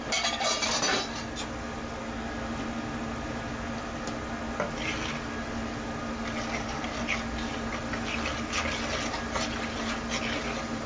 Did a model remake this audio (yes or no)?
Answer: no